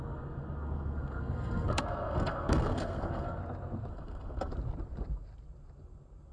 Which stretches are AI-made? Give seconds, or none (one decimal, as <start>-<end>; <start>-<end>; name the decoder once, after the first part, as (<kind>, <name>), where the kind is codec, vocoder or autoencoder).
0.0-3.4 (codec, SNAC); 3.9-4.5